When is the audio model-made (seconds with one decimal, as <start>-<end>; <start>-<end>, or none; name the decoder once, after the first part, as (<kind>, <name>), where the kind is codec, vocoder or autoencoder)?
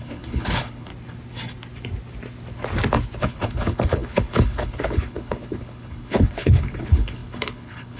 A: 0.0-0.9 (codec, HILCodec); 3.2-8.0